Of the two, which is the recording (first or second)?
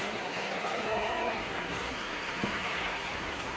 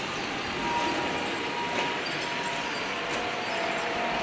second